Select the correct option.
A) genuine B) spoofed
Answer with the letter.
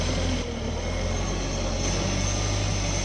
A